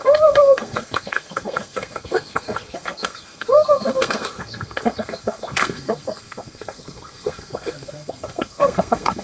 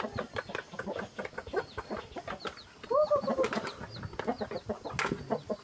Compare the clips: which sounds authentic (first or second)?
second